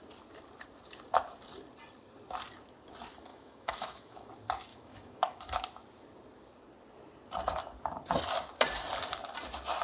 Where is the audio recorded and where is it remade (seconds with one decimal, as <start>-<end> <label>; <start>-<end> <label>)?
0.0-3.3 recorded; 3.3-4.3 remade; 4.3-4.7 recorded; 4.7-5.4 remade; 5.4-9.8 recorded